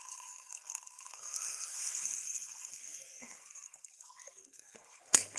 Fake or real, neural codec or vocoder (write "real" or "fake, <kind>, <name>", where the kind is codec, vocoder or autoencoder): fake, codec, SNAC